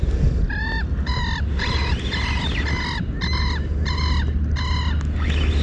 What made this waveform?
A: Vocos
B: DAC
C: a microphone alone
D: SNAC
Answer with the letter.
C